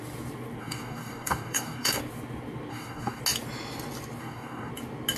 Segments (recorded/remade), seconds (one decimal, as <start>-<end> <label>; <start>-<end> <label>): 0.0-0.6 recorded; 0.6-2.0 remade; 2.0-2.7 recorded; 2.7-3.2 remade; 3.2-4.2 recorded; 4.2-4.7 remade; 4.7-5.2 recorded